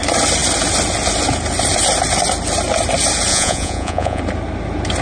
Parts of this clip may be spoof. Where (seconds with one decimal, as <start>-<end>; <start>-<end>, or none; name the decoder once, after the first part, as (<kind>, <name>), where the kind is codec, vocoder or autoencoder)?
3.3-4.2 (vocoder, Vocos)